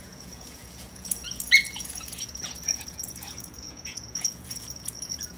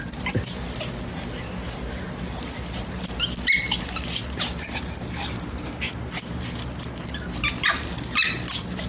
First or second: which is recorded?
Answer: second